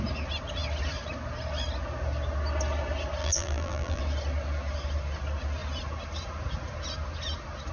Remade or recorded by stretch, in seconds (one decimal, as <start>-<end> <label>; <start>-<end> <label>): 0.0-3.2 recorded; 3.2-4.0 remade; 4.0-7.7 recorded